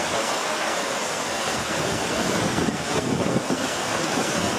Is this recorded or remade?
remade